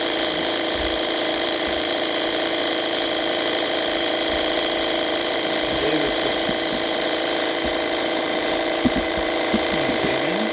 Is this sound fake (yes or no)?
yes